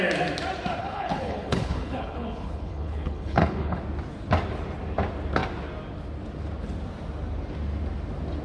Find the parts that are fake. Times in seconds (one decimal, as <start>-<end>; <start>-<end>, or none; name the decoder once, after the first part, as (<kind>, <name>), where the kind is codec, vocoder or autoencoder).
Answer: 0.8-3.8 (codec, HILCodec)